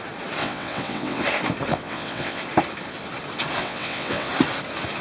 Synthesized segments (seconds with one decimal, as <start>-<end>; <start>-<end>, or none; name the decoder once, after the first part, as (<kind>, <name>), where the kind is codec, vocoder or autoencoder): 0.4-1.2 (vocoder, WaveNeXt); 1.7-2.4; 3.6-4.3